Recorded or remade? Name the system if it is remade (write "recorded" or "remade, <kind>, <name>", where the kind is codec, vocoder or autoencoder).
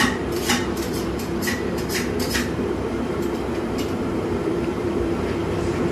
remade, vocoder, BigVGAN v2